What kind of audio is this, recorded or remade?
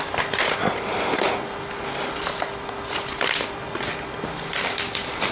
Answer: recorded